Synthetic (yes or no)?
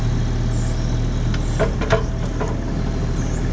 no